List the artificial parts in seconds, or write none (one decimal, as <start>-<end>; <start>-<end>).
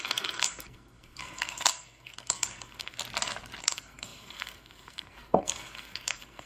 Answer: 0.0-3.0; 3.6-6.5